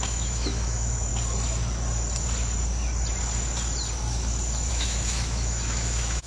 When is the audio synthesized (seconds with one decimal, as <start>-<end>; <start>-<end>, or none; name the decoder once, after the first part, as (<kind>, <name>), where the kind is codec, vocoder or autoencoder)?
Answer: 0.0-1.1 (autoencoder, DAC-VAE); 4.7-6.3